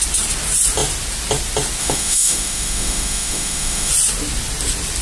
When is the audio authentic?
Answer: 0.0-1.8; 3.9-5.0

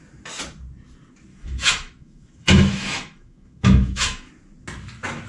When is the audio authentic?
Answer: 0.0-1.3; 4.3-5.3

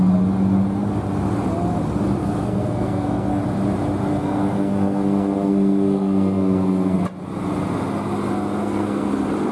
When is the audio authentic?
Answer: 0.0-2.2; 3.4-4.2; 7.0-8.6; 9.1-9.5